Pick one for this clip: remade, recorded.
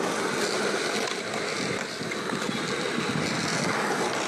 recorded